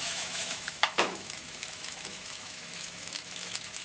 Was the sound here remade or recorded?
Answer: remade